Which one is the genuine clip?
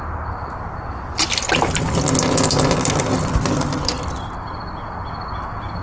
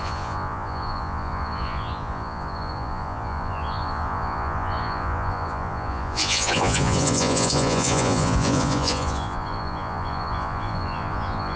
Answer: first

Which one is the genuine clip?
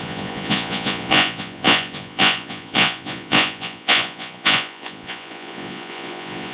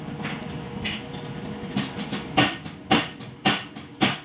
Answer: second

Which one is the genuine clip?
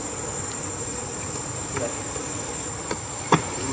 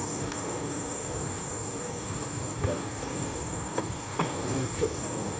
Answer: first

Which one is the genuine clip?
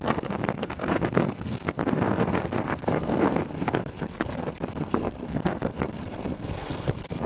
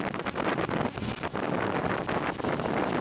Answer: second